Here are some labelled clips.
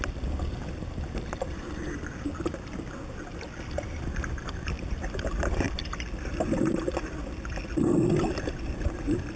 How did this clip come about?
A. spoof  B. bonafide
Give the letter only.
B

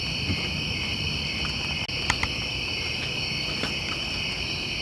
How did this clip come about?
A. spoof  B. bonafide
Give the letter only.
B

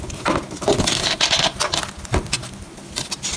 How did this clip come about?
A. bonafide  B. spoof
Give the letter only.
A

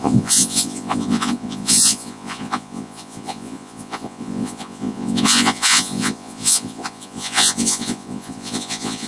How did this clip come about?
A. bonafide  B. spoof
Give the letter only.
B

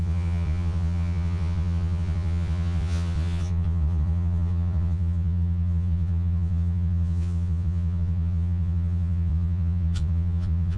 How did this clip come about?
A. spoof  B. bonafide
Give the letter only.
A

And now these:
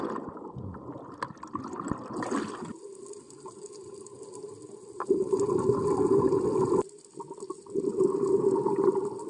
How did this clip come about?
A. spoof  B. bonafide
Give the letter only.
B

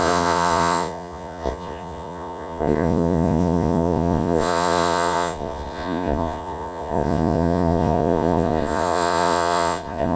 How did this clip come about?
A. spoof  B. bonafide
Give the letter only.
A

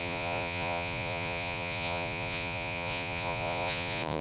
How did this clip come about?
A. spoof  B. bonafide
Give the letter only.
A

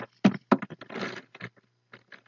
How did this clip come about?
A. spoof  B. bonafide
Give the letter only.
B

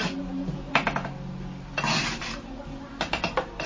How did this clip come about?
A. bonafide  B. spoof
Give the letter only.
A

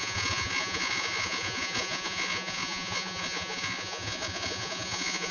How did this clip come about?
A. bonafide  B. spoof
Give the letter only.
B